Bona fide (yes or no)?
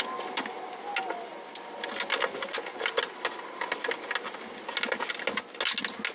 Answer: yes